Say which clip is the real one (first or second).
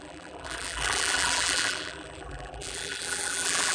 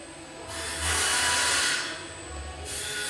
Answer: second